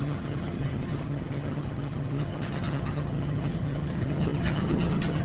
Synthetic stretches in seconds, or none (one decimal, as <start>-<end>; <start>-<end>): 0.0-5.2